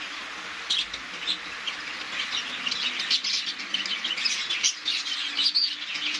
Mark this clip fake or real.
real